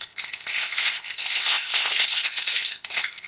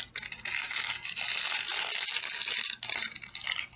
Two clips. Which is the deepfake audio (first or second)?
first